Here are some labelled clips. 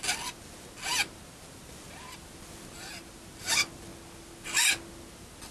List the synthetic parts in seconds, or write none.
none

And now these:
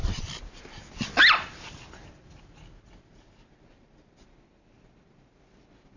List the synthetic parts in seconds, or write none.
none

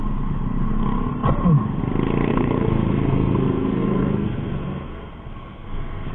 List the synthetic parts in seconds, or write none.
2.3-6.1

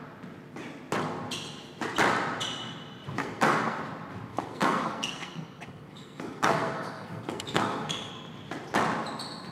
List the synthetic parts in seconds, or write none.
3.2-3.8; 4.3-8.1

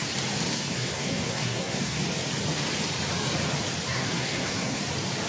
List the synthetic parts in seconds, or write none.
0.5-2.0; 3.9-4.8

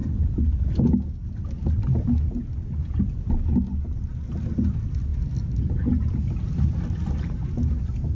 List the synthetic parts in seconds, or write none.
none